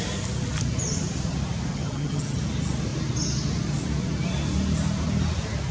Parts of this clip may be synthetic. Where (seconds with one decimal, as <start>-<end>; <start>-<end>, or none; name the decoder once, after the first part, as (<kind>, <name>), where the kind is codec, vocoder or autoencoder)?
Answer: 1.7-2.4 (vocoder, HiFi-GAN)